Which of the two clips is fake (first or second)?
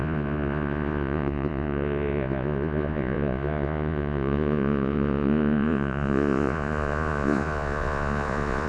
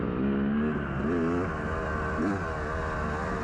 first